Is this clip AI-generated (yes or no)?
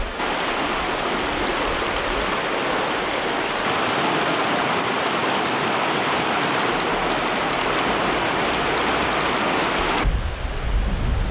no